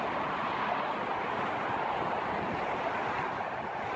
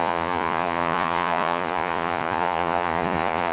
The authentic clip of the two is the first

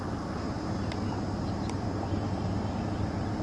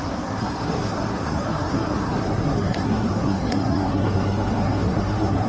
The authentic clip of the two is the first